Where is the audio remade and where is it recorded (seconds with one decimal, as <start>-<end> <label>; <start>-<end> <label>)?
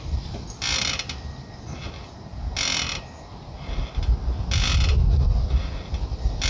0.0-6.5 recorded